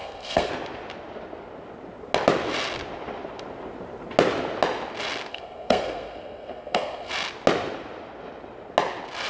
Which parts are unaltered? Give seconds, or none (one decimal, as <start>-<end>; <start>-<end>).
0.5-5.3; 7.1-9.3